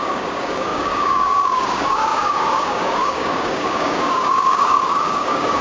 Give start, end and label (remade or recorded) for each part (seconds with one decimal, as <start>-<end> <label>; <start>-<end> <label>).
0.0-5.6 remade